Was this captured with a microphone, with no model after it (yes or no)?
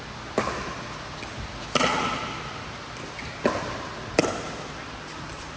yes